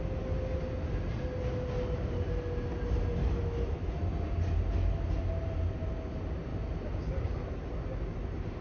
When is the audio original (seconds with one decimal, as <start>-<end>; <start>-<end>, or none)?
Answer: 0.0-3.2; 3.9-8.6